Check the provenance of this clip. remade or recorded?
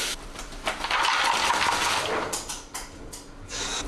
recorded